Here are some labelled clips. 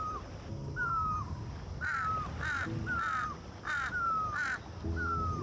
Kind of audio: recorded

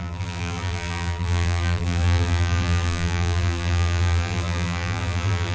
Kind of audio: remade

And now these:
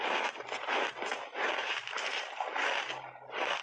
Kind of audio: recorded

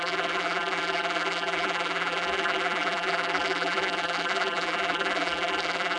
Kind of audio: remade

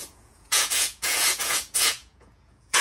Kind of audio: remade